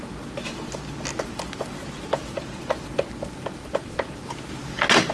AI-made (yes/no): no